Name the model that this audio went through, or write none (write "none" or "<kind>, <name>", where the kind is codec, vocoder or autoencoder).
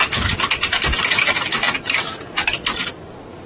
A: none